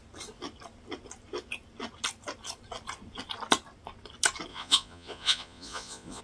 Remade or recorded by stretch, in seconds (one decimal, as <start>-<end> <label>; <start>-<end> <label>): 0.0-4.5 recorded; 4.5-6.2 remade